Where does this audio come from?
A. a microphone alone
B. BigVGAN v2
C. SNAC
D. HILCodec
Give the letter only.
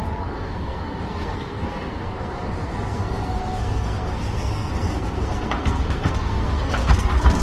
C